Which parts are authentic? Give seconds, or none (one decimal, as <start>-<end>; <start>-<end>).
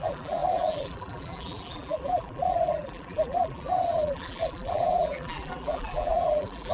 none